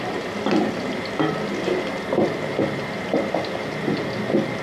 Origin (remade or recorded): recorded